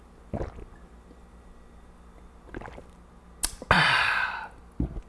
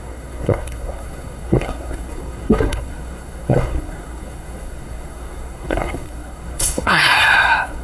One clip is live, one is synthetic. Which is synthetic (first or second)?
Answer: second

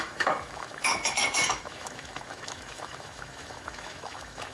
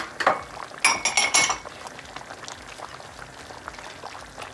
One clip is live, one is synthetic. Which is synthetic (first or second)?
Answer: first